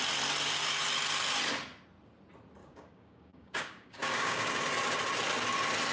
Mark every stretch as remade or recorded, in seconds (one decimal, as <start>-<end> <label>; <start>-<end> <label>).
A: 0.0-2.6 recorded; 2.6-4.5 remade; 4.5-5.9 recorded